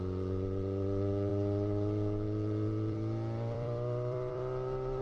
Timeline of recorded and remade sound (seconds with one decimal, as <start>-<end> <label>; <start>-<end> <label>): 0.0-5.0 remade